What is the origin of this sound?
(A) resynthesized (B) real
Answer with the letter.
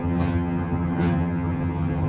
A